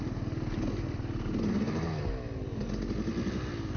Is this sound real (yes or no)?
yes